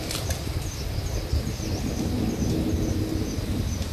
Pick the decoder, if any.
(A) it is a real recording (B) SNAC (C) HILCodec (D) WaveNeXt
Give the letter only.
A